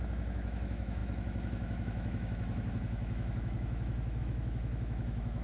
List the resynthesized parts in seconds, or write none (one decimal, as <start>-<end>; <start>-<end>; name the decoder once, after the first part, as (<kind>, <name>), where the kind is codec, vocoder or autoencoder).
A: 0.0-5.4 (autoencoder, DAC-VAE)